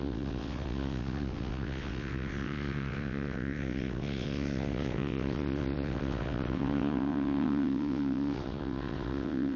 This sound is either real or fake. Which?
fake